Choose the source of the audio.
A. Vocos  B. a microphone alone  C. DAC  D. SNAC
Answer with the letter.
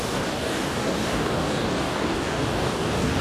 C